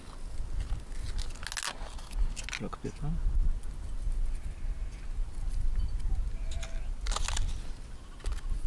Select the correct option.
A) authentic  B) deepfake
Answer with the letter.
A